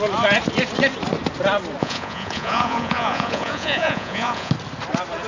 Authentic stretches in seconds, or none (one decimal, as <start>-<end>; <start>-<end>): 0.0-1.8; 4.5-5.3